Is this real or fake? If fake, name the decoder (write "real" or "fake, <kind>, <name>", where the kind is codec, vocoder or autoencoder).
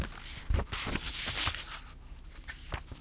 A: real